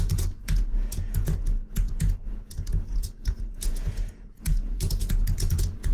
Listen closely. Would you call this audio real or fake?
fake